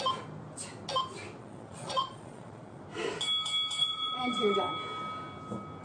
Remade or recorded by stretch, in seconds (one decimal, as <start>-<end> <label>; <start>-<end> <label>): 0.0-1.4 recorded; 1.4-2.8 remade; 2.8-3.8 recorded; 3.8-4.6 remade; 4.6-5.8 recorded